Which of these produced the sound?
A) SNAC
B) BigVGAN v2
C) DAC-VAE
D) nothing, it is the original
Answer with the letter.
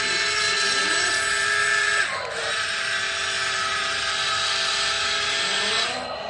D